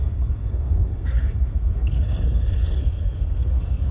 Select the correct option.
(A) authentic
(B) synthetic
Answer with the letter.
B